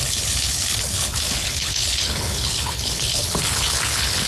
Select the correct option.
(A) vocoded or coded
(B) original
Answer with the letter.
A